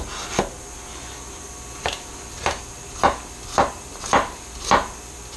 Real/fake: real